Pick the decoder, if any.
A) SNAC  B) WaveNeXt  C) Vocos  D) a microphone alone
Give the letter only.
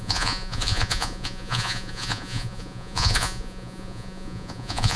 C